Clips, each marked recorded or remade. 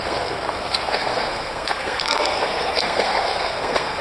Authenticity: remade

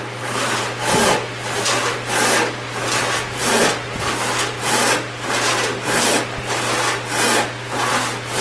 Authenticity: recorded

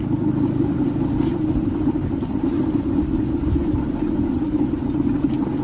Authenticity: recorded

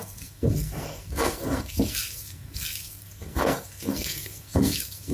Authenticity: remade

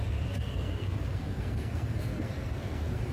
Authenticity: remade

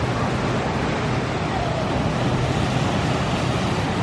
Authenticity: recorded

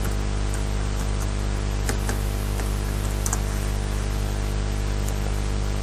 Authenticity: recorded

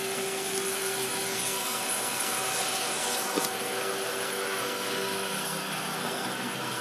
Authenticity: remade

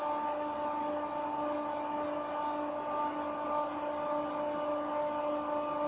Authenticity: recorded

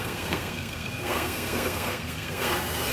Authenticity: remade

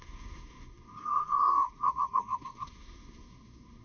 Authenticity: remade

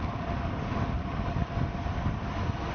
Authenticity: recorded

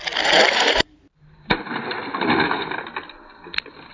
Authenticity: recorded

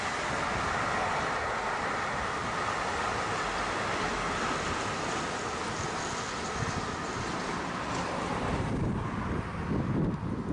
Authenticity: recorded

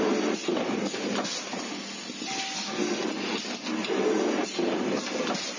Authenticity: recorded